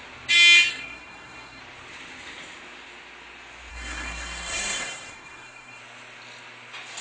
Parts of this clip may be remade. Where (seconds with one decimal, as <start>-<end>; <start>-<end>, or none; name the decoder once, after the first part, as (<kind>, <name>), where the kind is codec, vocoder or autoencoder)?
0.7-1.6 (codec, SNAC); 3.7-5.8